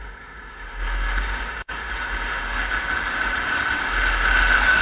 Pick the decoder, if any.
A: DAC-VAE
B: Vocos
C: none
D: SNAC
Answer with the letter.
A